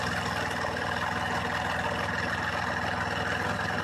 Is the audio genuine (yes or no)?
yes